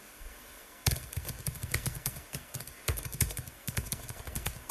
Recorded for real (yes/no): no